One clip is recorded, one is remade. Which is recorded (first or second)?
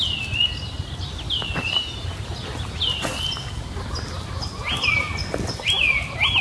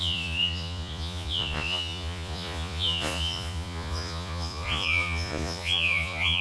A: first